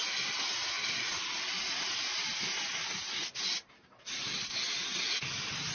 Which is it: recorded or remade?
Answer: recorded